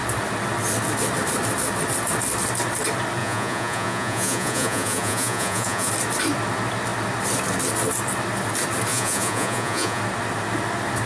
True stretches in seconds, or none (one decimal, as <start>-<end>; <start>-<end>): 0.0-3.2; 5.9-8.9; 10.0-11.1